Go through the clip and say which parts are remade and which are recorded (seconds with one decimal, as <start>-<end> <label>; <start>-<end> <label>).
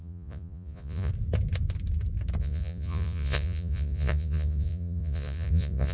0.0-1.1 remade; 1.1-2.4 recorded; 2.4-5.9 remade